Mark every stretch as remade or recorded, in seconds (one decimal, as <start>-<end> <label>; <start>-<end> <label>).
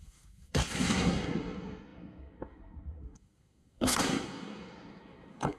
0.0-5.6 remade